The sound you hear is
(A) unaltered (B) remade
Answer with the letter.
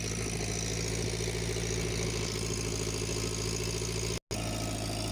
A